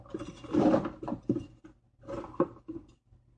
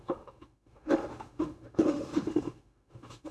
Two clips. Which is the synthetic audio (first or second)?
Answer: second